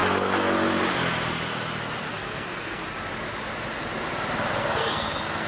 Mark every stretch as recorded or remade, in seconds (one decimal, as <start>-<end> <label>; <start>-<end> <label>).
0.0-2.1 recorded; 2.1-2.8 remade; 2.8-4.5 recorded; 4.5-5.5 remade